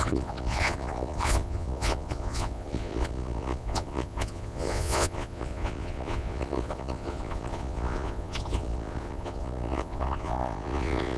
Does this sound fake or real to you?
fake